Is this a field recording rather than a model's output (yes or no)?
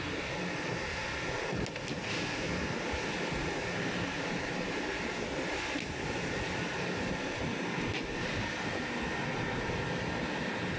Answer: yes